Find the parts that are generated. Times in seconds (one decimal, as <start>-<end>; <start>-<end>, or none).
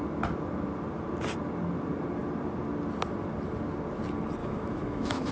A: 4.4-5.3